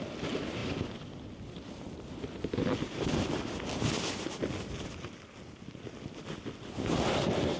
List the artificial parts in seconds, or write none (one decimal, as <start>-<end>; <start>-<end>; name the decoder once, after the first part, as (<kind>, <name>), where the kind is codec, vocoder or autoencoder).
none